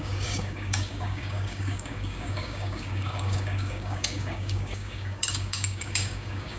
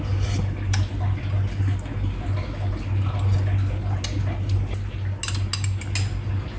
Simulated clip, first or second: first